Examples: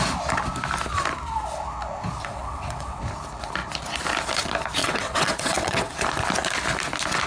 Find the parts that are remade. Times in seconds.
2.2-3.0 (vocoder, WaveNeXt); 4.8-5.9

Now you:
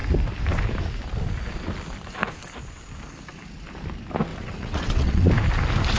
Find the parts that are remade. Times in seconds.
4.3-5.3 (vocoder, WaveNeXt)

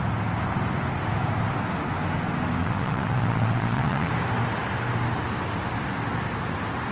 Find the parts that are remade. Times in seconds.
2.6-4.1 (vocoder, WaveNeXt)

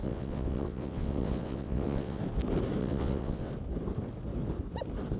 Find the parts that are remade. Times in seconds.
0.0-2.2 (vocoder, WaveNeXt); 2.8-3.5

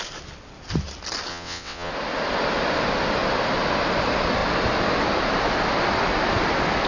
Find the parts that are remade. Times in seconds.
1.3-1.9 (vocoder, WaveNeXt)

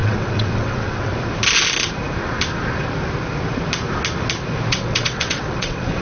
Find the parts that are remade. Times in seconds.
0.0-1.1 (vocoder, WaveNeXt); 4.7-6.0